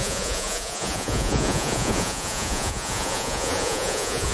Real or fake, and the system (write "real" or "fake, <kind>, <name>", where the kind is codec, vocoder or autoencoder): fake, vocoder, Vocos